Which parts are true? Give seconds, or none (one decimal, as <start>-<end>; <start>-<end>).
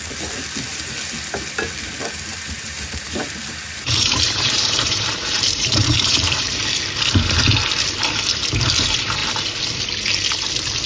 0.0-2.3; 6.6-10.9